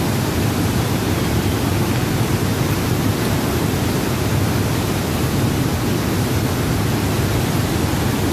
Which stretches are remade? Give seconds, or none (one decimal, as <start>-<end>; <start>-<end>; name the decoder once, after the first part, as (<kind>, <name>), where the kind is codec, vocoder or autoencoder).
none